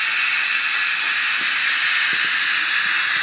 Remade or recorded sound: recorded